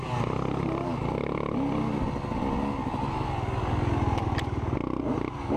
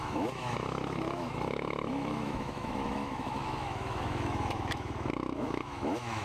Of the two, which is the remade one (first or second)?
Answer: second